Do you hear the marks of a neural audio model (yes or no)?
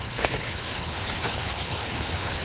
yes